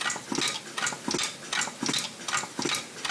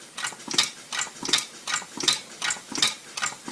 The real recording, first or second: first